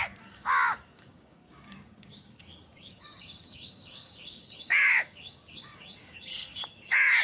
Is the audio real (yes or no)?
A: no